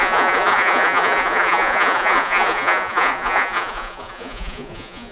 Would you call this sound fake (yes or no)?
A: yes